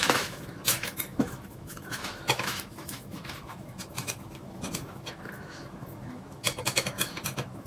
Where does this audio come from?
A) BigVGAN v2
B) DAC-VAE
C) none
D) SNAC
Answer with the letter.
B